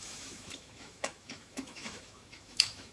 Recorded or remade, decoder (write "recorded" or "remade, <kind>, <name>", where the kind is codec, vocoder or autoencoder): remade, autoencoder, DAC-VAE